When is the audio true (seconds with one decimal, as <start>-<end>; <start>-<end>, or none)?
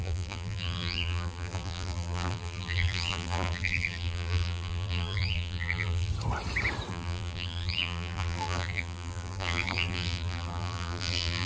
6.1-6.9